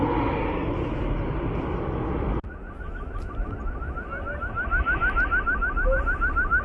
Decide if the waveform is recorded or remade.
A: recorded